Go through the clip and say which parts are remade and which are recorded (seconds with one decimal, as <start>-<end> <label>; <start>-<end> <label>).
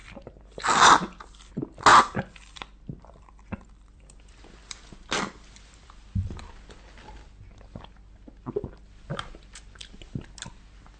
0.0-1.9 recorded; 1.9-6.4 remade; 6.4-11.0 recorded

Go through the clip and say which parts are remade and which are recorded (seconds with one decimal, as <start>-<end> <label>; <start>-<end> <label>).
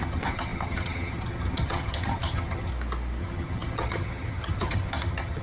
0.0-2.7 remade; 2.7-3.2 recorded; 3.2-5.4 remade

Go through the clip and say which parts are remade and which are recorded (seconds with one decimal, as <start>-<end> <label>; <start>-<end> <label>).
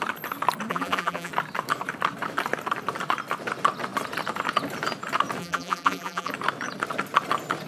0.0-0.7 recorded; 0.7-1.3 remade; 1.3-5.4 recorded; 5.4-6.3 remade; 6.3-7.7 recorded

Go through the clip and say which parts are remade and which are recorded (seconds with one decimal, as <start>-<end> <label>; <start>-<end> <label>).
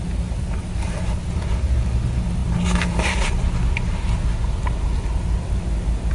0.0-6.1 recorded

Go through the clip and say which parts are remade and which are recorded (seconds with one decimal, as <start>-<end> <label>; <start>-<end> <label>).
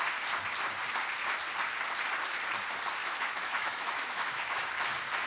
0.0-3.0 recorded; 3.0-4.7 remade; 4.7-5.3 recorded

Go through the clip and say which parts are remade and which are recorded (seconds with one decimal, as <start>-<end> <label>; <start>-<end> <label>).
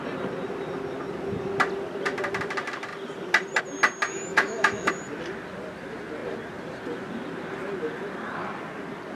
0.0-4.3 recorded; 4.3-4.9 remade; 4.9-9.2 recorded